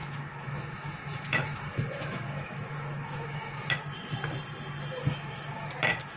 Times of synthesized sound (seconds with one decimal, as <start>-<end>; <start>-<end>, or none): 0.0-3.7; 5.0-5.7